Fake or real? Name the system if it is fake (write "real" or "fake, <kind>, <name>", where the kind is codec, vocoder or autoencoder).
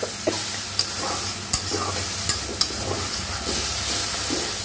real